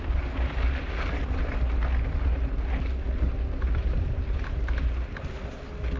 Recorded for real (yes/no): yes